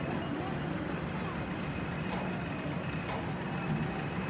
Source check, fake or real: real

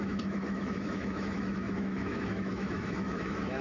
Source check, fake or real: fake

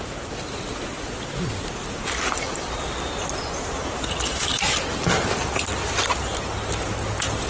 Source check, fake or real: real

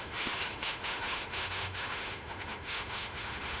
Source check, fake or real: fake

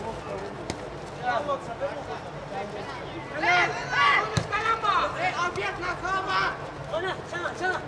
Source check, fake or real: real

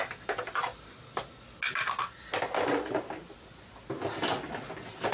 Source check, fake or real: real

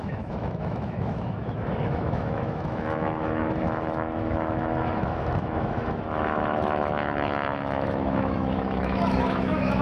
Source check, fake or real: fake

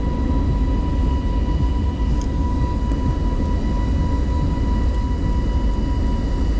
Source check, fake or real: real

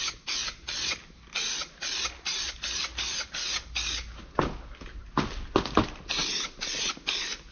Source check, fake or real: real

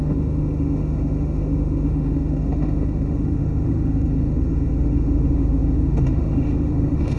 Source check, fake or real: fake